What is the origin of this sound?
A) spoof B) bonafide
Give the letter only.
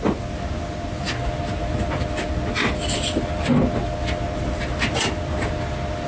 B